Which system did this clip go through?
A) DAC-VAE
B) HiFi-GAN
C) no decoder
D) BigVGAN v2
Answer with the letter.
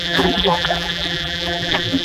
D